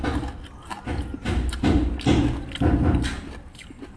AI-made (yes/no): no